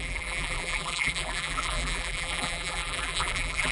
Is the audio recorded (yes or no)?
no